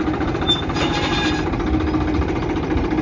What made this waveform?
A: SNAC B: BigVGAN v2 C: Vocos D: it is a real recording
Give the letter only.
D